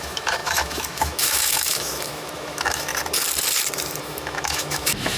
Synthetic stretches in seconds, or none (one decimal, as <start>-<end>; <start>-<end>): 0.0-2.9; 4.0-5.2